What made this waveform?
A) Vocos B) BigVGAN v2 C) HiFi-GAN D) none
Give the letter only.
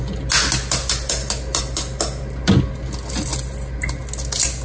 D